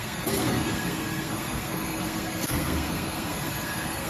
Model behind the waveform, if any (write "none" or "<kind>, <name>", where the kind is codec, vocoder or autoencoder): codec, SNAC